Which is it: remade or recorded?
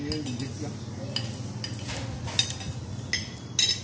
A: recorded